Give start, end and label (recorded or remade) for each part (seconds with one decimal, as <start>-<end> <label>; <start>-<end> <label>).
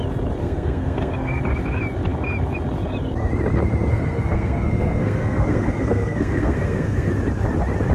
0.0-0.4 recorded; 0.4-1.4 remade; 1.4-3.9 recorded; 3.9-7.1 remade; 7.1-7.9 recorded